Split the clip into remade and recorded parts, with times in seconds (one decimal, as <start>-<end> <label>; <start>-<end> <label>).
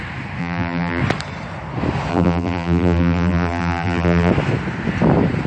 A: 0.0-0.4 recorded; 0.4-1.0 remade; 1.0-2.1 recorded; 2.1-4.3 remade; 4.3-5.5 recorded